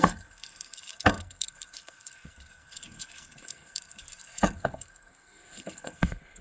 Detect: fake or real fake